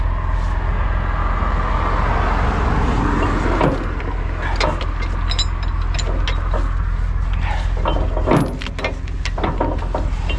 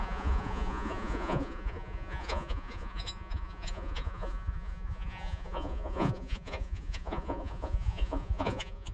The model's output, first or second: second